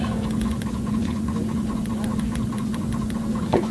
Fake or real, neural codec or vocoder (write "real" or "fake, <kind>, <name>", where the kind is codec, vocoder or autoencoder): fake, vocoder, Vocos